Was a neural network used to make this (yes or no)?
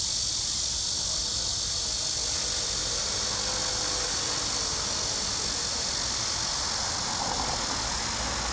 no